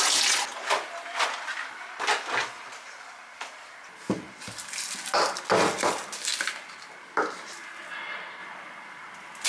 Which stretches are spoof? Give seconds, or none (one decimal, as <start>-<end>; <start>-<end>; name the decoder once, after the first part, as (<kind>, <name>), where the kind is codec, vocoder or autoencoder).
none